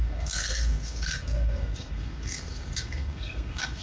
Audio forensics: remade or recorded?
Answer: remade